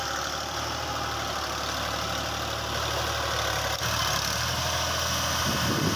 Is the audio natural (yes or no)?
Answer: yes